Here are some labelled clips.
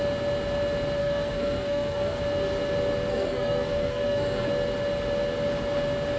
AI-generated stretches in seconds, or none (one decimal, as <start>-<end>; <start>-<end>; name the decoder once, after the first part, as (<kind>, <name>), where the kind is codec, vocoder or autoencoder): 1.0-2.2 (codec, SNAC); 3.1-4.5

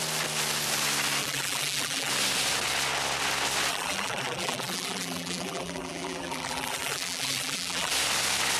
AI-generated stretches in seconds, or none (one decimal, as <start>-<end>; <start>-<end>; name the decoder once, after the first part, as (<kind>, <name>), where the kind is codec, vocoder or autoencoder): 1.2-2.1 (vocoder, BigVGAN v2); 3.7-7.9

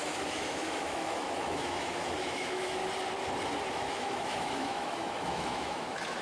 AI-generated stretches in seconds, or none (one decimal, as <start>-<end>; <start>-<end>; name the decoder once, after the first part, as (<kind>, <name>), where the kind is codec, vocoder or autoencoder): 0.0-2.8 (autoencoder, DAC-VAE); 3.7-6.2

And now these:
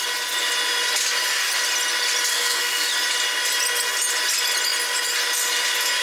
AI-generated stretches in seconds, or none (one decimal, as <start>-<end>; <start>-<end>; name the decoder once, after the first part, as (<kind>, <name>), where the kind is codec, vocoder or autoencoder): 2.3-2.9 (codec, SNAC)

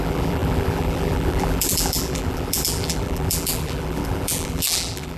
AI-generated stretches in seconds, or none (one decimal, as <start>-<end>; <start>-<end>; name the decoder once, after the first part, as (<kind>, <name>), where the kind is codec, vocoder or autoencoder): 0.0-5.2 (vocoder, BigVGAN v2)